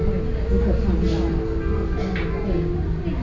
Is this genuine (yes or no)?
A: yes